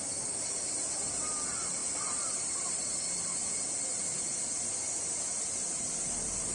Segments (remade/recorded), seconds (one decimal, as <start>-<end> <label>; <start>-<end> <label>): 0.0-6.5 recorded

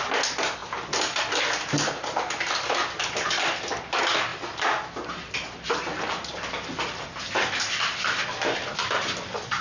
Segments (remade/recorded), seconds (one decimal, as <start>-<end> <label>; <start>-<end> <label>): 0.0-9.6 recorded